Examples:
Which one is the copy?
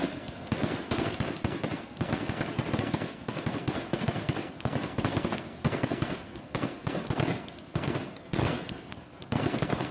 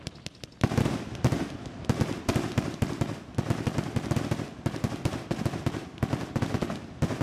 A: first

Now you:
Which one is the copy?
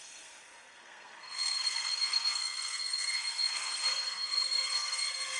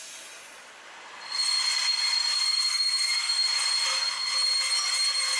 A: first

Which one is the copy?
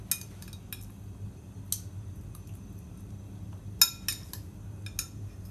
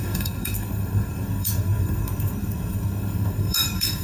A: second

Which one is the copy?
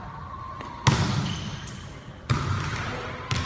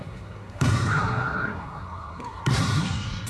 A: second